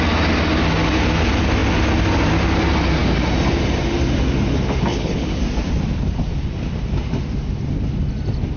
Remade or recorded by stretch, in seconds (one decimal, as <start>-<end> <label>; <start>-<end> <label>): 0.0-4.9 recorded; 4.9-5.4 remade; 5.4-8.6 recorded

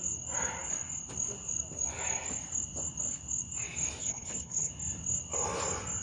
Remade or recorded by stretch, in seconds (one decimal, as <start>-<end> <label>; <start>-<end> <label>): 0.0-4.0 recorded; 4.0-4.7 remade; 4.7-6.0 recorded